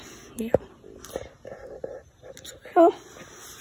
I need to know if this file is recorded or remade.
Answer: recorded